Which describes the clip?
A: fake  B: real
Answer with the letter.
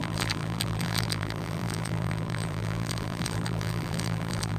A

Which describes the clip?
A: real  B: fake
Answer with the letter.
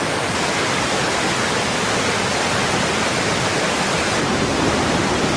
A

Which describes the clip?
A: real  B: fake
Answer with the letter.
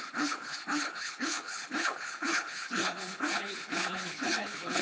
B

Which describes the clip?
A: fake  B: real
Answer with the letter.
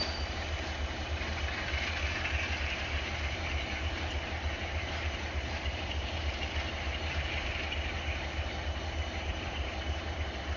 A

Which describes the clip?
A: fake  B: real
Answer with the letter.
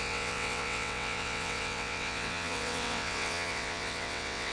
A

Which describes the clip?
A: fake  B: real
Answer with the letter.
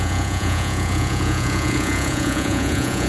A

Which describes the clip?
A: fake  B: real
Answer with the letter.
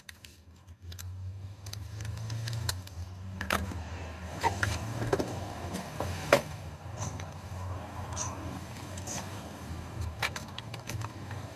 A